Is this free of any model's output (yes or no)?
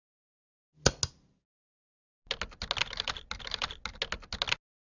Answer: yes